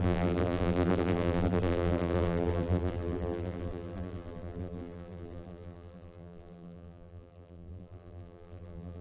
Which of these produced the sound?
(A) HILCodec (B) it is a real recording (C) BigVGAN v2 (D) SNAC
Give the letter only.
C